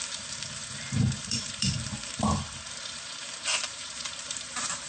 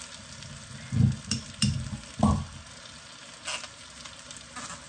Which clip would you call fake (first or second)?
first